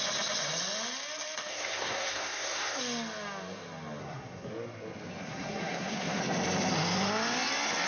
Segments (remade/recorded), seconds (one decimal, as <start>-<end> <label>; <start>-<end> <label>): 0.0-1.5 recorded; 1.5-2.8 remade; 2.8-4.0 recorded; 4.0-4.5 remade; 4.5-5.2 recorded; 5.2-6.2 remade; 6.2-7.9 recorded